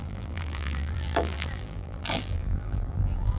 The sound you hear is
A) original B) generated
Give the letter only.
B